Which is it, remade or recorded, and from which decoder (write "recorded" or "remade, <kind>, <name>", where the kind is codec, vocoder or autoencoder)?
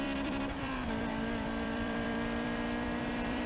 remade, vocoder, BigVGAN v2